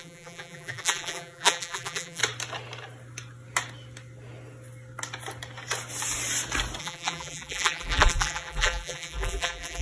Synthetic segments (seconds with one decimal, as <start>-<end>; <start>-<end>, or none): 0.0-2.2; 6.8-9.8